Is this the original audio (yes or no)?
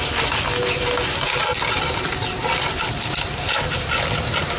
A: yes